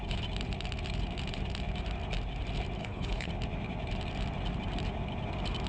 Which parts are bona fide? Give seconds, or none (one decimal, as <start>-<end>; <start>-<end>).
0.0-2.8; 3.3-5.7

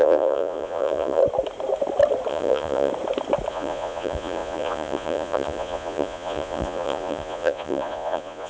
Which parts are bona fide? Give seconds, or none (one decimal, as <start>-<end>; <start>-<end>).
1.2-2.3; 2.9-3.5

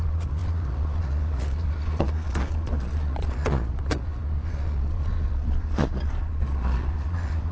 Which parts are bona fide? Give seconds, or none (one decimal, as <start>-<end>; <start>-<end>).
none

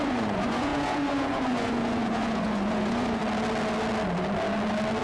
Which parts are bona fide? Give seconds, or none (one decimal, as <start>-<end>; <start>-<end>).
3.2-5.0

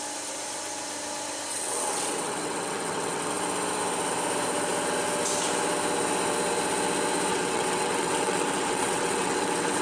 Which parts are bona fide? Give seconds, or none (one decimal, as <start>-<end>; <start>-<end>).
0.0-1.5; 3.3-7.3